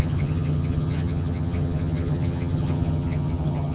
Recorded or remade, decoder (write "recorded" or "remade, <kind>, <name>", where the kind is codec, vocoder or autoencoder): remade, vocoder, HiFi-GAN